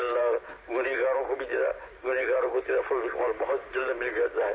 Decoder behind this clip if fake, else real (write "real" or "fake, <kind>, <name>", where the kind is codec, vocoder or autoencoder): fake, vocoder, BigVGAN v2